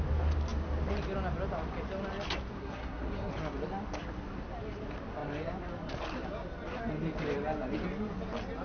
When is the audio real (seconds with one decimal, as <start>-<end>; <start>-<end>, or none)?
0.0-2.6; 3.3-8.6